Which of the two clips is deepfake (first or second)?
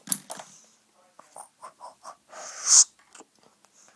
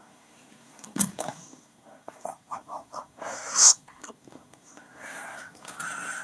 second